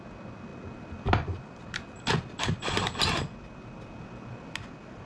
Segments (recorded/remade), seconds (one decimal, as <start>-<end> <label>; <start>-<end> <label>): 0.0-5.1 recorded